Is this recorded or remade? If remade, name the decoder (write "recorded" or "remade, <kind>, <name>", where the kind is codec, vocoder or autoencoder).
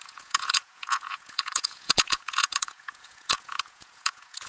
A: remade, vocoder, Vocos